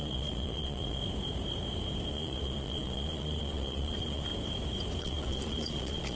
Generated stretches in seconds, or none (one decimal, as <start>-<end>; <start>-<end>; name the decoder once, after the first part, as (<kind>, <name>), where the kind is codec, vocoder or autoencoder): 0.0-1.0 (vocoder, Vocos); 2.1-4.3; 5.0-6.2